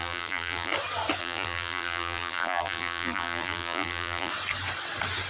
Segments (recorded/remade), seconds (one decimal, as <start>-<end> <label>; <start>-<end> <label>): 0.0-0.7 remade; 0.7-1.2 recorded; 1.2-4.3 remade; 4.3-5.3 recorded